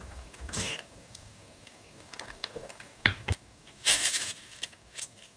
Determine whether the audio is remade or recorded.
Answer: remade